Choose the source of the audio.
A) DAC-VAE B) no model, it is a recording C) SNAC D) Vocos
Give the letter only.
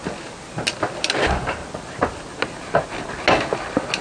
B